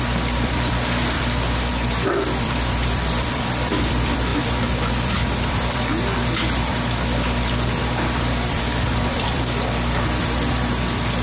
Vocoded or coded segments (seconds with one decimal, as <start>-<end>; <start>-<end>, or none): 0.0-1.7; 2.4-5.9; 8.5-11.2